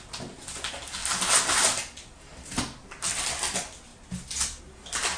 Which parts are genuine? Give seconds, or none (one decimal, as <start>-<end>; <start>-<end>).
0.0-5.2